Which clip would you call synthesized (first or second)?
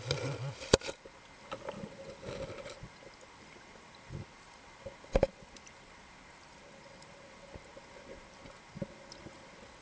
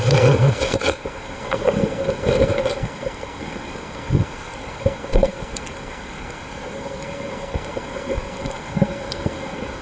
second